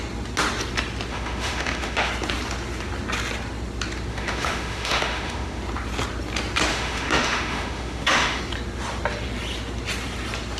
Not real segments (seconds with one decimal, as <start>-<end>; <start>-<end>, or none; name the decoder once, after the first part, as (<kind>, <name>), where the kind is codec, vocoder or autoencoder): 1.1-2.1 (autoencoder, DAC-VAE); 4.1-5.6; 6.7-8.4